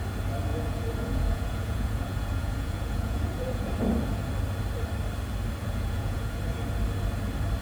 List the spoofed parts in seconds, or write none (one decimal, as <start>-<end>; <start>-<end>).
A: 0.5-3.7; 5.6-6.4